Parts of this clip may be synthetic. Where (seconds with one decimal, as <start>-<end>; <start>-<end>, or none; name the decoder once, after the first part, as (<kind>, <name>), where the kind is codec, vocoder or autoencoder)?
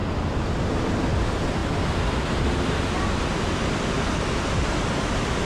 none